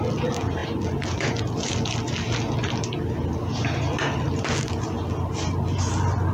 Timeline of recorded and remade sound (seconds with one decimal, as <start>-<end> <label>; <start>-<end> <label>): 0.0-6.3 recorded